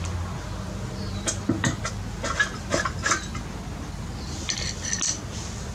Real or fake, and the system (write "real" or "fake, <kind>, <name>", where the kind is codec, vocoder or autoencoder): real